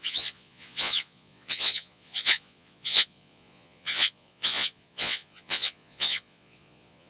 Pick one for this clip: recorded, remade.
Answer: remade